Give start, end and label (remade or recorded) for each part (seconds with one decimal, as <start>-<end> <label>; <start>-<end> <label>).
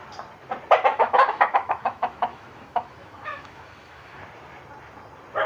0.0-0.9 recorded; 0.9-4.2 remade; 4.2-5.5 recorded